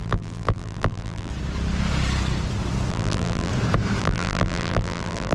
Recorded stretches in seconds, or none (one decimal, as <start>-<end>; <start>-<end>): 1.3-2.9; 3.5-4.0